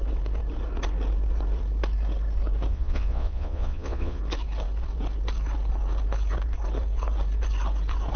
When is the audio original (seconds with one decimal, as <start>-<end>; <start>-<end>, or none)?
0.0-2.7; 4.2-8.2